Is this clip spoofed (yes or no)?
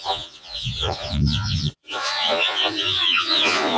yes